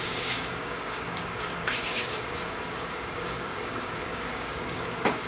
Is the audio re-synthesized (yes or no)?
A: yes